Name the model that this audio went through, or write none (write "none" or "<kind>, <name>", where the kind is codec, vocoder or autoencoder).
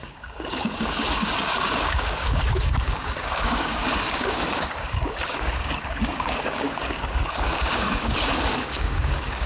codec, DAC